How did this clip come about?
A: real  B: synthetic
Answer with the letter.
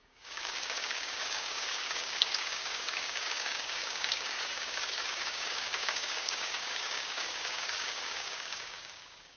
B